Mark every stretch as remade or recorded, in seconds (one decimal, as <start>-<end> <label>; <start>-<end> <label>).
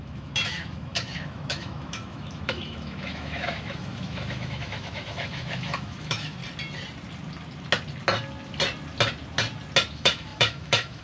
0.0-6.4 remade; 6.4-9.9 recorded; 9.9-11.0 remade